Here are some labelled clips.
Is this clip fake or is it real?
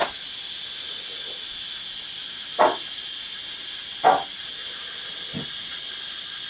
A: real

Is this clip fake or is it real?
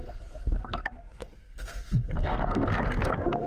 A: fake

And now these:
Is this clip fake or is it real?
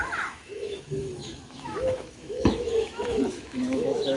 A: fake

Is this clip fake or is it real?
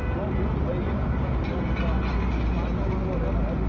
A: real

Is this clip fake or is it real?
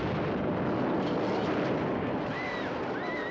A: real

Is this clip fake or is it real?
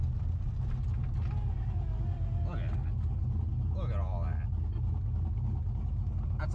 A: real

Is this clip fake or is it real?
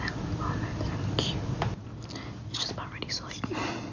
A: real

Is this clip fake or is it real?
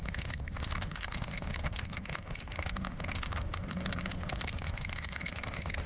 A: fake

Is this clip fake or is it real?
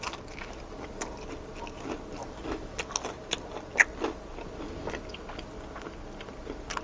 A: real